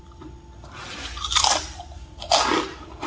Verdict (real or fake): real